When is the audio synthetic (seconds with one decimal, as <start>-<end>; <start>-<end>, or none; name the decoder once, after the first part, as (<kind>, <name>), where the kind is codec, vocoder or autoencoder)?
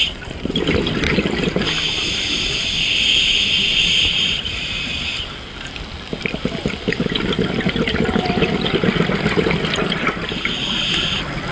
4.1-4.9 (vocoder, Vocos)